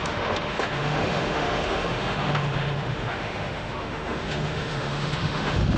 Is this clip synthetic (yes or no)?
yes